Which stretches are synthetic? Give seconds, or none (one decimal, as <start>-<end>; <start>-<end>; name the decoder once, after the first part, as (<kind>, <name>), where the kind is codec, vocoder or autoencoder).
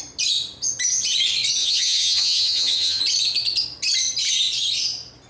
1.6-3.0 (vocoder, HiFi-GAN)